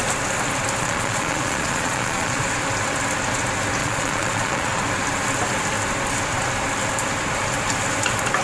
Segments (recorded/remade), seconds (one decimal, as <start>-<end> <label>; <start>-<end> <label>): 0.0-0.8 recorded; 0.8-2.4 remade; 2.4-3.8 recorded; 3.8-4.8 remade; 4.8-8.4 recorded